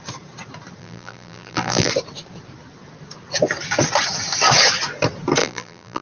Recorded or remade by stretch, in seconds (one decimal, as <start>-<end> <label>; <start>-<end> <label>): 0.0-0.8 recorded; 0.8-1.9 remade; 1.9-5.4 recorded; 5.4-6.0 remade